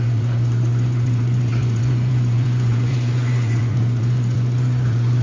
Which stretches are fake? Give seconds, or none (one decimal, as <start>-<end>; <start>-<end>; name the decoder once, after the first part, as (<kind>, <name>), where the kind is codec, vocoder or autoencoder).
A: 0.0-5.2 (vocoder, Vocos)